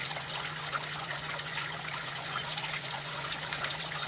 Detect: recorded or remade remade